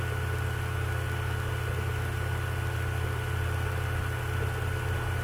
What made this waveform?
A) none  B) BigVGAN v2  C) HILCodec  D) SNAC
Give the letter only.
A